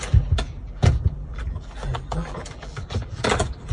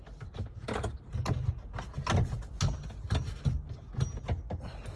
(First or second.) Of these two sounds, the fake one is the first